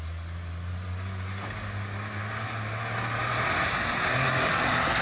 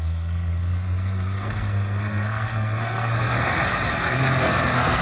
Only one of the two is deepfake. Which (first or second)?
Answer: second